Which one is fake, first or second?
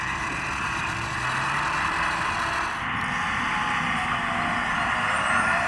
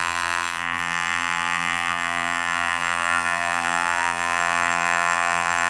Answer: second